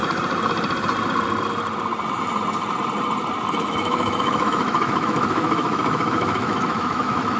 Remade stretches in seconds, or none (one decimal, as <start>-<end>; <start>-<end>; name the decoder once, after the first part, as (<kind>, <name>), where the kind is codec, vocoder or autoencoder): 3.5-7.4 (autoencoder, DAC-VAE)